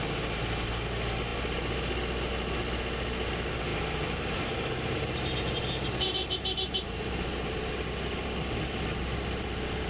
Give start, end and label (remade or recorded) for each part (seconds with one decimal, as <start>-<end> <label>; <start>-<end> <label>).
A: 0.0-3.7 recorded; 3.7-7.7 remade; 7.7-9.9 recorded

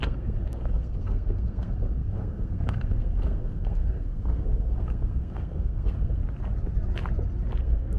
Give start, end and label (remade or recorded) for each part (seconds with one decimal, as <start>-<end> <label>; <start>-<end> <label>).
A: 0.0-6.2 remade; 6.2-7.6 recorded; 7.6-8.0 remade

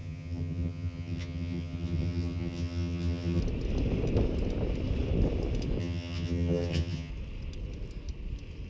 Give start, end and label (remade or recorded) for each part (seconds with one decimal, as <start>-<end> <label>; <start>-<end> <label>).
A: 0.0-3.4 remade; 3.4-5.8 recorded; 5.8-7.1 remade; 7.1-8.7 recorded

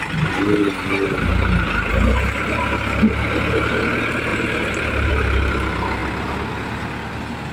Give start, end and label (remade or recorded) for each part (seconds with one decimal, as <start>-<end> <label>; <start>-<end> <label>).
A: 0.0-4.3 recorded; 4.3-5.1 remade; 5.1-7.5 recorded

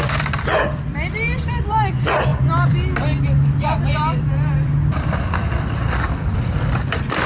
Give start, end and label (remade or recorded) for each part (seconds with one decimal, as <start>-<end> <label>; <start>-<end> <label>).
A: 0.0-7.3 remade